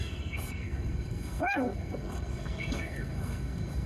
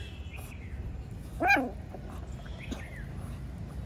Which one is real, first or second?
second